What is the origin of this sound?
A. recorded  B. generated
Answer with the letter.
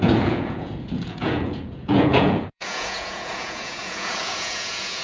B